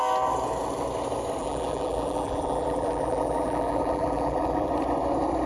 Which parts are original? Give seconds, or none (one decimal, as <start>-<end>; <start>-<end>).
0.0-1.4; 4.7-5.5